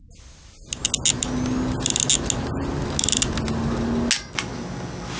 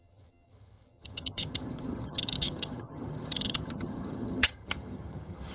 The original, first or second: first